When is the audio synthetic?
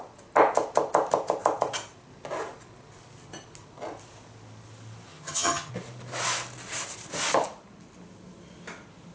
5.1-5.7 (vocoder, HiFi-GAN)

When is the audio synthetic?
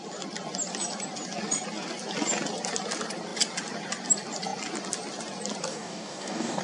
5.7-6.6 (codec, DAC)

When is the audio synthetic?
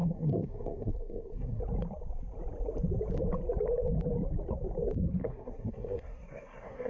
0.0-1.6 (codec, SNAC); 5.2-6.9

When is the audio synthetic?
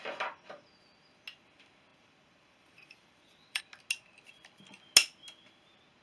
1.9-3.6 (vocoder, BigVGAN v2)